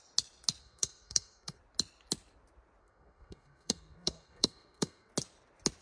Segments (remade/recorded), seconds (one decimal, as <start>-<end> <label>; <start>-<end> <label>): 0.0-0.6 recorded; 0.6-1.6 remade; 1.6-2.8 recorded; 2.8-5.1 remade; 5.1-5.8 recorded